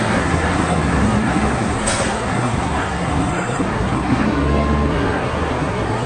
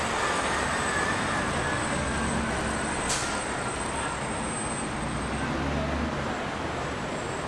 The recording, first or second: second